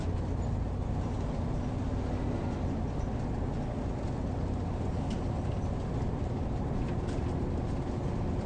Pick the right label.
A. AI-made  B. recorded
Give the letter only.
B